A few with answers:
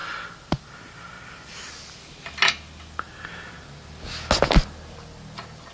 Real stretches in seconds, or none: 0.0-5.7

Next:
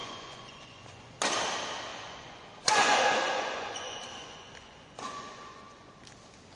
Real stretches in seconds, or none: 1.2-1.9; 5.9-6.6